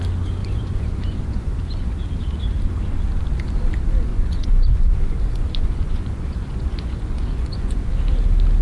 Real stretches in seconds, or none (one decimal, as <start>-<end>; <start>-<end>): 0.0-0.4; 1.9-4.1; 7.9-8.6